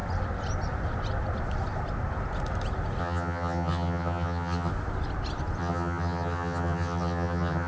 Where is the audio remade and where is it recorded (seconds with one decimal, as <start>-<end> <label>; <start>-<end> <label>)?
0.0-3.0 recorded; 3.0-4.7 remade; 4.7-5.6 recorded; 5.6-7.7 remade